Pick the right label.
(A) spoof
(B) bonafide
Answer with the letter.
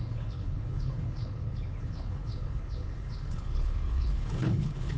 A